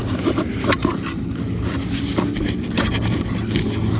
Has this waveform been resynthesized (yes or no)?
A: no